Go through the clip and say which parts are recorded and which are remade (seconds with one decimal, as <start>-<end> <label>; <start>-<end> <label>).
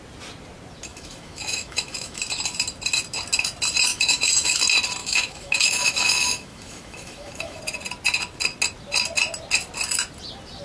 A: 0.0-0.9 recorded; 0.9-2.2 remade; 2.2-3.9 recorded; 3.9-4.6 remade; 4.6-5.0 recorded; 5.0-7.6 remade; 7.6-10.6 recorded